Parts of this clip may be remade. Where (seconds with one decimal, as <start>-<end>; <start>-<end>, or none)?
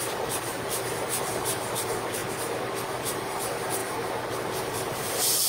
0.0-2.2; 3.0-3.8; 4.4-5.5